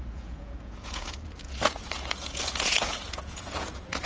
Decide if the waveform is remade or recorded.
remade